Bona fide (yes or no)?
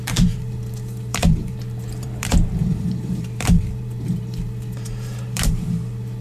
no